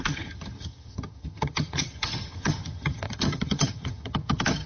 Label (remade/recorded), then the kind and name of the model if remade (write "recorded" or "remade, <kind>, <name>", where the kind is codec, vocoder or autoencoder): remade, vocoder, HiFi-GAN